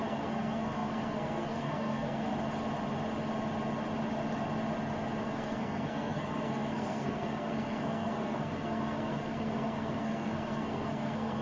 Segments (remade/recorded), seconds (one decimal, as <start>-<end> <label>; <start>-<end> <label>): 0.0-2.3 remade; 2.3-5.2 recorded; 5.2-11.4 remade